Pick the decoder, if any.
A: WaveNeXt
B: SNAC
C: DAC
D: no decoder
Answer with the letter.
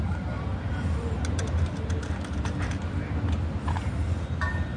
D